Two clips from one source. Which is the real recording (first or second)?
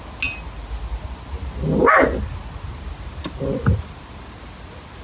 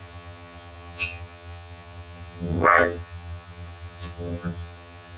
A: first